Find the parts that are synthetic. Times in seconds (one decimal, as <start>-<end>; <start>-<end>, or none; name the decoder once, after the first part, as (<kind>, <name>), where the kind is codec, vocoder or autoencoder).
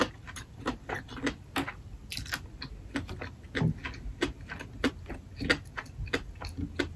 none